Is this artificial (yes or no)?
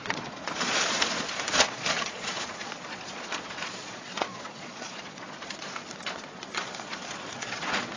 yes